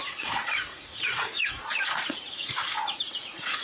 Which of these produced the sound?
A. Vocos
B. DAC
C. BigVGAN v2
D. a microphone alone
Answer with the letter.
A